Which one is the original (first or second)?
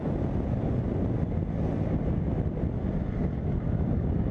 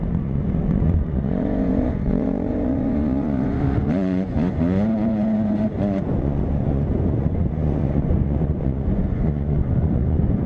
first